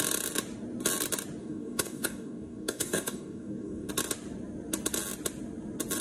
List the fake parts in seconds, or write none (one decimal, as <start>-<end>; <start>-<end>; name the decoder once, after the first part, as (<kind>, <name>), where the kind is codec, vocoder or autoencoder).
1.4-3.9 (codec, DAC)